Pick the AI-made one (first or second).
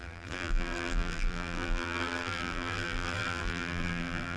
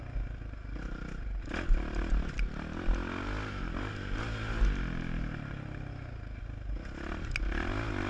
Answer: first